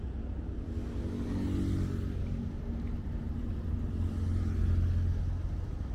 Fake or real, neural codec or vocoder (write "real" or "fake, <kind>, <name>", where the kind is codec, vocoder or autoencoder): real